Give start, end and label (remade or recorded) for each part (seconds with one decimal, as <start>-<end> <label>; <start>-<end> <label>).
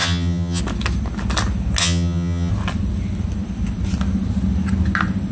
0.0-0.6 remade; 0.6-1.8 recorded; 1.8-2.5 remade; 2.5-5.3 recorded